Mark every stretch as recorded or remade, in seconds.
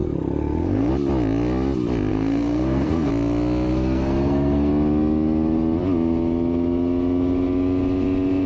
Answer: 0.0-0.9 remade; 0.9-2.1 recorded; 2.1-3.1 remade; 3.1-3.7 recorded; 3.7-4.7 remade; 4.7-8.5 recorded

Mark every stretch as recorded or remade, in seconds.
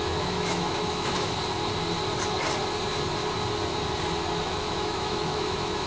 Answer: 0.0-1.4 remade; 1.4-4.4 recorded; 4.4-5.9 remade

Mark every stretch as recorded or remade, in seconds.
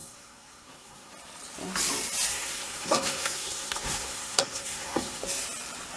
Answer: 0.0-1.1 remade; 1.1-2.3 recorded; 2.3-5.2 remade; 5.2-6.0 recorded